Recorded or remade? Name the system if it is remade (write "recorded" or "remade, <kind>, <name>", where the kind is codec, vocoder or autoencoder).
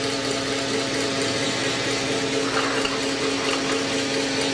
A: recorded